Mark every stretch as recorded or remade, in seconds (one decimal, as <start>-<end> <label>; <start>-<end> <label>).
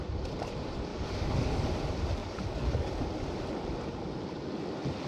0.0-0.9 recorded; 0.9-1.7 remade; 1.7-2.2 recorded; 2.2-2.9 remade; 2.9-5.1 recorded